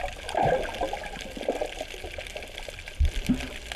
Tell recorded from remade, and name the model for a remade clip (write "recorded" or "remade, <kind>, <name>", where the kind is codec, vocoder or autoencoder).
recorded